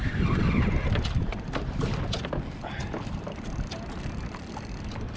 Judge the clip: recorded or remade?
recorded